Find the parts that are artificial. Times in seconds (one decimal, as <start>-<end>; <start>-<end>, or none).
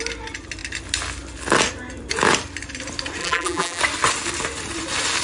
3.2-3.8